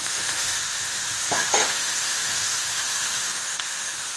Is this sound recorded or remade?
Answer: remade